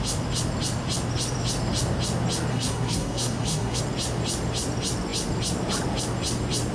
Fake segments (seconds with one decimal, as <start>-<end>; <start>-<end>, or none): 2.5-3.8